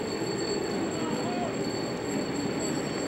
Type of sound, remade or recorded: recorded